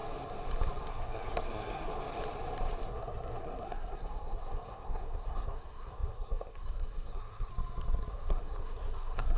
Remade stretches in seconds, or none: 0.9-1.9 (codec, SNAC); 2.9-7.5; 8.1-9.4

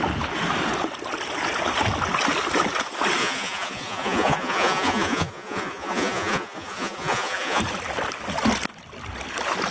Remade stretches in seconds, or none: 3.2-7.6 (vocoder, Vocos)

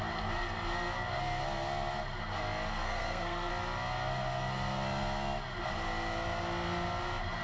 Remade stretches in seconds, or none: 2.7-3.5 (codec, SNAC)

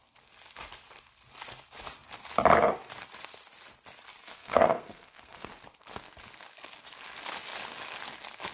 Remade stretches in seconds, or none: 4.2-5.5 (codec, SNAC)

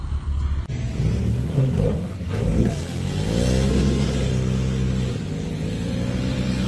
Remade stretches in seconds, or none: 1.3-2.7 (codec, SNAC); 3.7-4.3

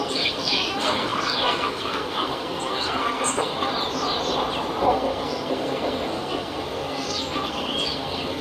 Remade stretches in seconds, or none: 0.0-3.7 (codec, SNAC); 4.8-8.4

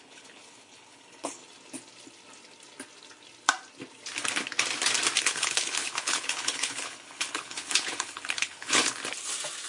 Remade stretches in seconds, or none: 0.0-1.4 (codec, HILCodec); 5.2-9.0

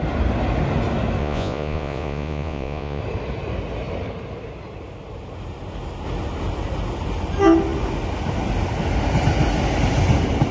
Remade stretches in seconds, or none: 1.2-3.0 (vocoder, Vocos)